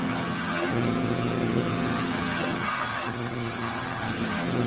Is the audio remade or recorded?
remade